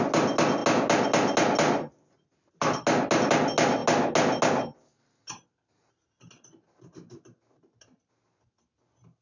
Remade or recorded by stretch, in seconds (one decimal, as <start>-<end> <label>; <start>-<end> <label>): 0.0-9.2 recorded